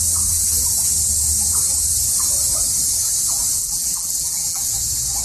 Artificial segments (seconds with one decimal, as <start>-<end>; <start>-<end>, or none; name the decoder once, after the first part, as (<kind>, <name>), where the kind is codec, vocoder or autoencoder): 3.6-4.6 (vocoder, BigVGAN v2)